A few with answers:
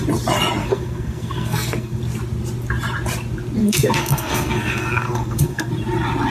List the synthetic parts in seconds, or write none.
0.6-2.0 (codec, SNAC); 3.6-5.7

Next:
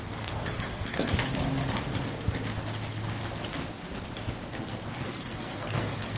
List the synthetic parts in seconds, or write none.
0.0-1.2 (codec, SNAC); 4.5-6.2